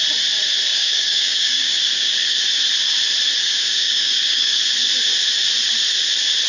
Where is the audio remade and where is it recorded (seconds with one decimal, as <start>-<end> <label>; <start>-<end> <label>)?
0.0-0.7 recorded; 0.7-2.4 remade; 2.4-3.4 recorded; 3.4-4.6 remade; 4.6-6.5 recorded